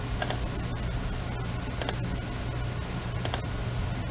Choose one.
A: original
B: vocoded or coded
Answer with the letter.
A